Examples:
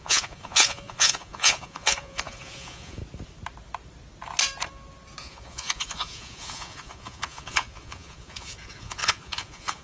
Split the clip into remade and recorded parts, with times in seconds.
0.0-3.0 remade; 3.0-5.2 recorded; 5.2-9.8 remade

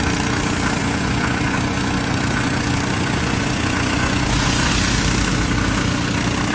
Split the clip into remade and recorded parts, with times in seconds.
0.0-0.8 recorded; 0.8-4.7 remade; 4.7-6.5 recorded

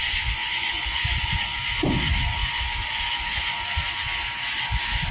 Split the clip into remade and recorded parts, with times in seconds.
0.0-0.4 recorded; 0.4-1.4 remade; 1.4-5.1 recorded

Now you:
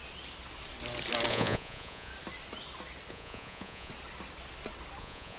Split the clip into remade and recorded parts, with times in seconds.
0.0-1.3 recorded; 1.3-2.1 remade; 2.1-3.1 recorded; 3.1-3.9 remade; 3.9-5.0 recorded; 5.0-5.4 remade

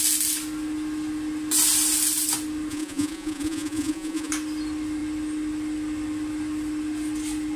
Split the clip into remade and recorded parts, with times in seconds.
0.0-2.7 recorded; 2.7-4.3 remade; 4.3-7.6 recorded